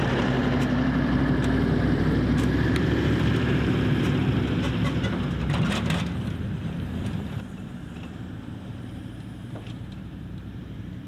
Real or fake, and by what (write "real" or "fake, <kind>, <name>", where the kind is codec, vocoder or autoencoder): fake, vocoder, BigVGAN v2